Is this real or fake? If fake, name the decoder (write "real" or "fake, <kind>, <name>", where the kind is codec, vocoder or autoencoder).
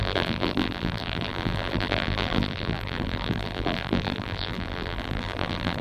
fake, vocoder, BigVGAN v2